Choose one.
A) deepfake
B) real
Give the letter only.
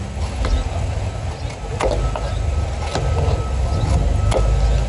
B